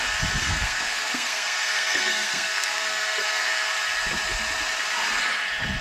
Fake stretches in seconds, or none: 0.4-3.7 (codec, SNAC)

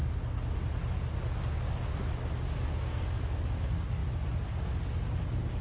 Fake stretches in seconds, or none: 2.7-3.2 (codec, SNAC)

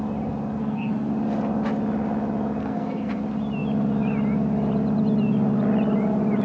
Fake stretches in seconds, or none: 0.6-1.1 (codec, SNAC); 2.6-3.2

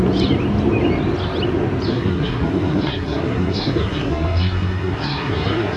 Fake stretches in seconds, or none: 1.9-5.8 (codec, SNAC)

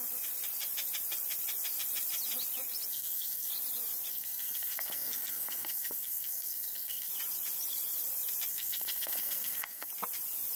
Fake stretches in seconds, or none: 2.9-3.5 (codec, SNAC); 4.1-7.1; 8.5-9.9

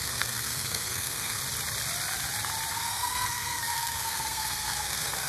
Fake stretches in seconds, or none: 0.0-1.4 (codec, SNAC); 2.7-5.3

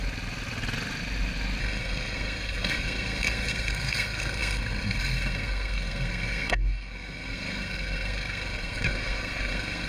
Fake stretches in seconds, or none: 1.6-9.9 (codec, SNAC)

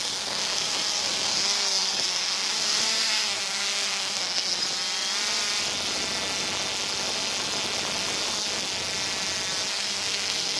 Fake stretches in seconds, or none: 0.0-4.6 (codec, SNAC); 9.7-10.6